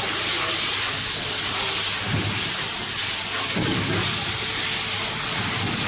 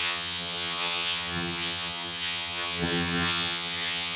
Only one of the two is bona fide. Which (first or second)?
first